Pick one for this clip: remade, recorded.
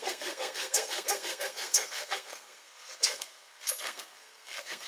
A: remade